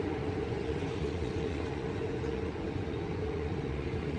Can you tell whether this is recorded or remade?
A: remade